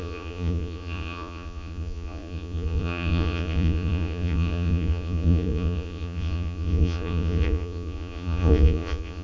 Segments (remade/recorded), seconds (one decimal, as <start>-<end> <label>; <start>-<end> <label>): 0.0-9.2 remade

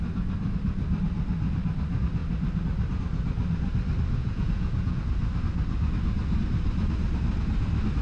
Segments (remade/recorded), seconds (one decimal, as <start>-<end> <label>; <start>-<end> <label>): 0.0-4.2 recorded; 4.2-5.0 remade; 5.0-8.0 recorded

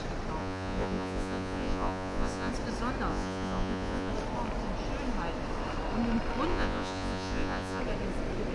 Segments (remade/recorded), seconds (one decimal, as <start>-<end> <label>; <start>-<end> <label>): 0.0-0.4 recorded; 0.4-2.5 remade; 2.5-3.1 recorded; 3.1-4.1 remade; 4.1-6.5 recorded; 6.5-7.8 remade; 7.8-8.5 recorded